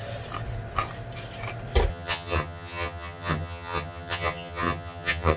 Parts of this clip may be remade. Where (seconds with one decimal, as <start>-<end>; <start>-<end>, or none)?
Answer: 1.9-5.4